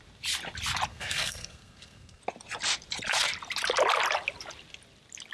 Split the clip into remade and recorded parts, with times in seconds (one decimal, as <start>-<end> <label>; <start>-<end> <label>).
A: 0.0-0.9 recorded; 0.9-2.2 remade; 2.2-5.3 recorded